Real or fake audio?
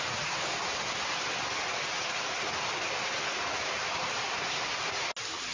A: real